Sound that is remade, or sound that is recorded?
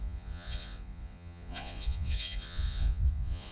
remade